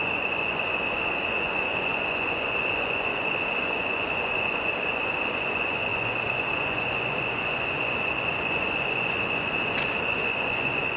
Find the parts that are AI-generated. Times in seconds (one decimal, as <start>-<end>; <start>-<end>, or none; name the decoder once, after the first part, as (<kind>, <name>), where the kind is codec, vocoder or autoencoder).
0.0-11.0 (vocoder, Vocos)